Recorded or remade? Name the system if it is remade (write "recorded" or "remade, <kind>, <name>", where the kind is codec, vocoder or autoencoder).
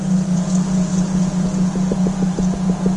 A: remade, vocoder, Vocos